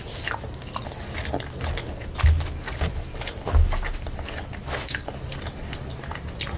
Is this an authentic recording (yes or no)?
yes